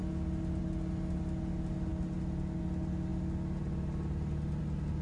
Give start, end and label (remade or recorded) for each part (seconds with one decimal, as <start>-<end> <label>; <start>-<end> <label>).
0.0-5.0 recorded